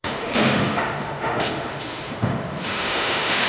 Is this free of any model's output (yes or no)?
no